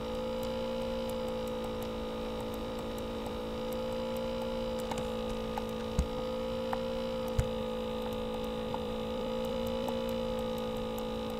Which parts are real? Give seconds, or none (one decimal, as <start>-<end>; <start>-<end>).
0.0-2.6; 3.4-8.7; 9.9-11.4